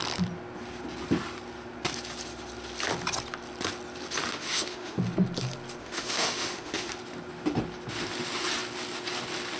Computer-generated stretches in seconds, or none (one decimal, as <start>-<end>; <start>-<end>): 4.3-5.0; 5.8-6.9